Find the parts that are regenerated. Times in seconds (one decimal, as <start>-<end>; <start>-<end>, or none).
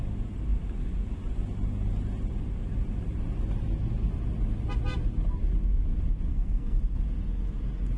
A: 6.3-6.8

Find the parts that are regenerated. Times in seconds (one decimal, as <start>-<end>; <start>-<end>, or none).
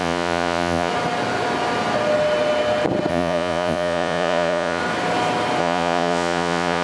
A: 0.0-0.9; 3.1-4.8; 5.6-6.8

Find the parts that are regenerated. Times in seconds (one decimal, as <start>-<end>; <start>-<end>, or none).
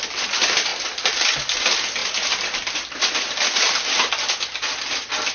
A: none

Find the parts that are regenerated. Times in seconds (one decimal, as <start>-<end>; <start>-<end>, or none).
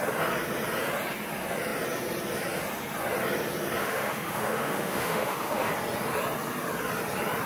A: 3.8-5.7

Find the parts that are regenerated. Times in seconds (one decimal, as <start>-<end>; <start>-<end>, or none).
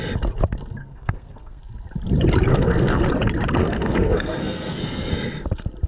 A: 0.8-1.6; 2.5-3.0; 3.6-5.1